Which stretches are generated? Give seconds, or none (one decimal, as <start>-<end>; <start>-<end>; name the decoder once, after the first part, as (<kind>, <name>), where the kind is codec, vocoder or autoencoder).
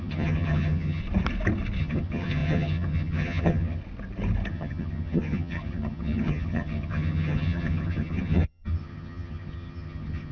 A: 0.0-1.0 (vocoder, HiFi-GAN); 1.8-3.8; 4.5-10.3